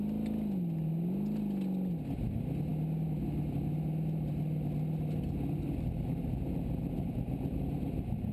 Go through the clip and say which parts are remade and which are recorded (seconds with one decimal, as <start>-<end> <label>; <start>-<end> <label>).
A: 0.0-8.3 recorded